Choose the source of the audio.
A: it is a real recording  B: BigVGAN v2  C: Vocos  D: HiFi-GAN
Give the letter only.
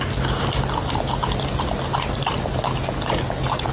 A